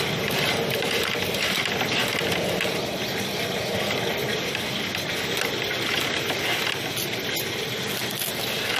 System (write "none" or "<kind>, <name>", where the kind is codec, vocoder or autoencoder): none